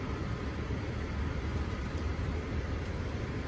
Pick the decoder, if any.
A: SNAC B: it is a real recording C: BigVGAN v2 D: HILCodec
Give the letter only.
C